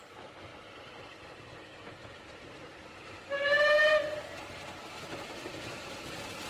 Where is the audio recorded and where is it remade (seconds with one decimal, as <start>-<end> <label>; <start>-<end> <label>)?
0.0-6.5 recorded